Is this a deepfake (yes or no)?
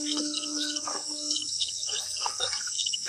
yes